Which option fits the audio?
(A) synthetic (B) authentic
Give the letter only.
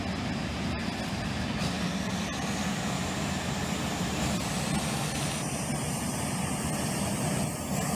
B